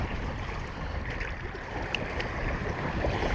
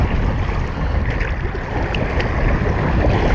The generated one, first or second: first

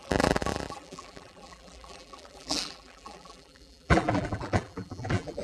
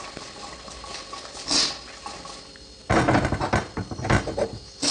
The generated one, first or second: first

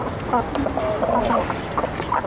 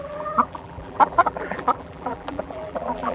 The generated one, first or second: second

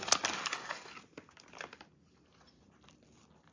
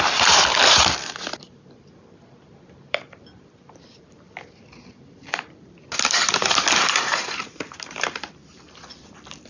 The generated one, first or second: second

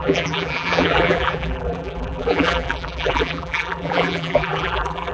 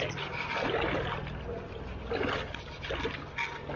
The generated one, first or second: first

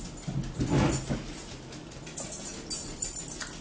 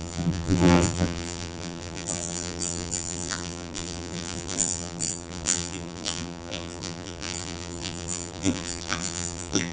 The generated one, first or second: second